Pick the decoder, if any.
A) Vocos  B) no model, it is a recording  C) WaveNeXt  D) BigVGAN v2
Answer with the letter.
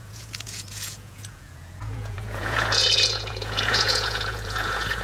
A